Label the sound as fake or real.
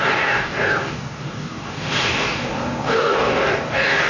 fake